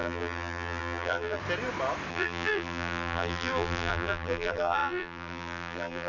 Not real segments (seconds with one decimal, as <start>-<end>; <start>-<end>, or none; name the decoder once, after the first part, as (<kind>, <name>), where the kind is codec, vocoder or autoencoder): 0.0-1.4 (vocoder, BigVGAN v2); 2.1-6.1